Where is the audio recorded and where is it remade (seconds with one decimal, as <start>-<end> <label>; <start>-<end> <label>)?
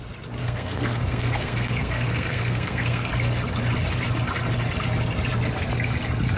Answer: 0.0-0.4 recorded; 0.4-3.1 remade; 3.1-6.4 recorded